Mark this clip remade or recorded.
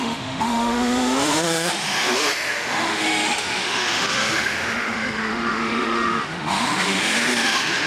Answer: remade